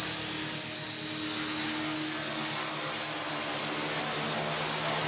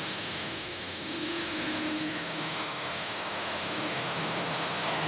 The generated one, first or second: second